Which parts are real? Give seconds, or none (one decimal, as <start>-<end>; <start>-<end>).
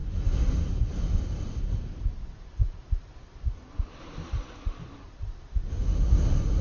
0.0-6.6